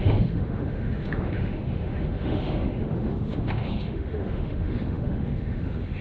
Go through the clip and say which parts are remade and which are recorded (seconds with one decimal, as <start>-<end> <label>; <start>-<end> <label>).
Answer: 0.0-6.0 remade